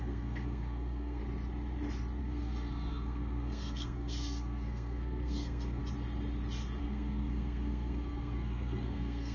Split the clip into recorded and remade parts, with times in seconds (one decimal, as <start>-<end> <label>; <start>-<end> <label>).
0.0-1.2 remade; 1.2-2.2 recorded; 2.2-5.8 remade; 5.8-6.8 recorded; 6.8-9.3 remade